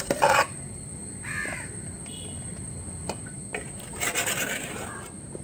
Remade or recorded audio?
recorded